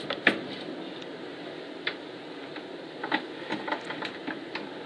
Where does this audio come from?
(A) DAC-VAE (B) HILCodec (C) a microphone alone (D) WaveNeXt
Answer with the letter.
C